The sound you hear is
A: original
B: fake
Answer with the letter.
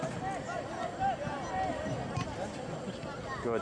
A